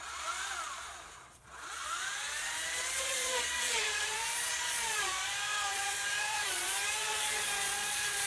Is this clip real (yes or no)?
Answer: no